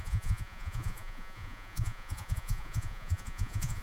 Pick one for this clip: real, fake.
fake